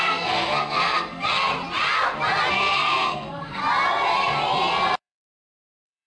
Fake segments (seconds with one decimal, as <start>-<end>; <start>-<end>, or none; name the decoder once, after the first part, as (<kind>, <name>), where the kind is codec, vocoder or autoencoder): 0.0-1.5 (codec, SNAC); 2.5-3.6; 5.0-6.1

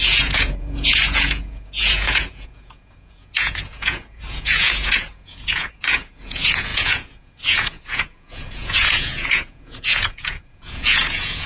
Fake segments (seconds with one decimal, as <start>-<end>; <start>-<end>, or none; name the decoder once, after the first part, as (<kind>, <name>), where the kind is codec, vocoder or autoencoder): 0.0-11.5 (vocoder, Vocos)

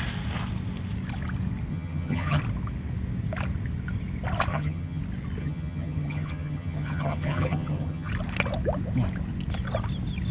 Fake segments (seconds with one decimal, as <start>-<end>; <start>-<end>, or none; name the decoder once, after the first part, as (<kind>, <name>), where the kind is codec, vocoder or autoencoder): 1.7-2.4 (vocoder, HiFi-GAN); 4.5-5.0; 5.4-8.1

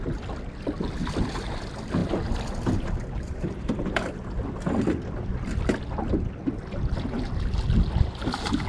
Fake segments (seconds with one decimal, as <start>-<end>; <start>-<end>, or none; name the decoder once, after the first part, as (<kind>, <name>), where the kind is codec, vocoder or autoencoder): 2.0-3.9 (vocoder, BigVGAN v2)

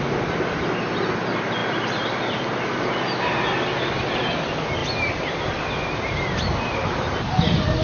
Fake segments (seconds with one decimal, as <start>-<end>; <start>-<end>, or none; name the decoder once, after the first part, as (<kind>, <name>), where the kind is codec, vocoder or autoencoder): none

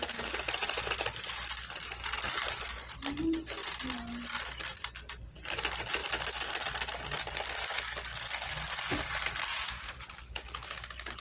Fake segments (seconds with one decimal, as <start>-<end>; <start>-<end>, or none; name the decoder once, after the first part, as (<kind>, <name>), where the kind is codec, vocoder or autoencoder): 9.5-10.1 (vocoder, Vocos)